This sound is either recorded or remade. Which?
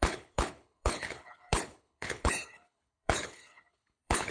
remade